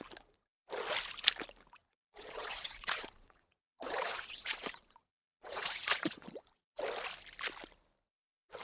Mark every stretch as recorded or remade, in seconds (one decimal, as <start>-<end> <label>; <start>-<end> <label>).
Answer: 0.0-1.8 recorded; 1.8-6.8 remade; 6.8-8.6 recorded